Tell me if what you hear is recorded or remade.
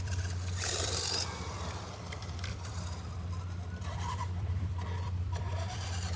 remade